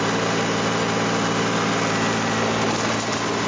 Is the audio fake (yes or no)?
no